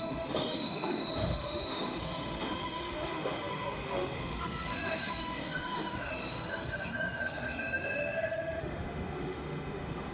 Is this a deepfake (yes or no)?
yes